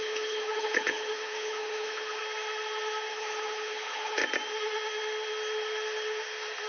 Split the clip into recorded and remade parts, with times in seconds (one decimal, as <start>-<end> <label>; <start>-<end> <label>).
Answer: 0.0-2.2 remade; 2.2-3.1 recorded; 3.1-4.2 remade; 4.2-6.7 recorded